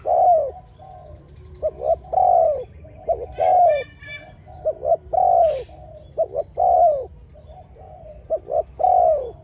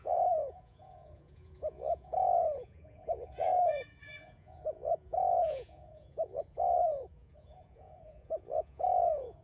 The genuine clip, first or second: first